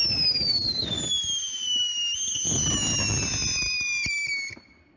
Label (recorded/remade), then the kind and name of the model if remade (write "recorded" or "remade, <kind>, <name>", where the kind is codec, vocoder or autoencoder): recorded